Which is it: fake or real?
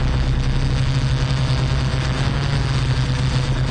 real